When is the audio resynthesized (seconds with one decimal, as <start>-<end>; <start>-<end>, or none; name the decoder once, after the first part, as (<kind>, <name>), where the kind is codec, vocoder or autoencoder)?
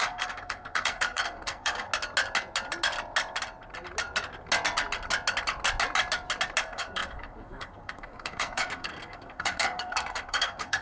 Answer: 0.0-1.9 (codec, SNAC); 6.6-10.8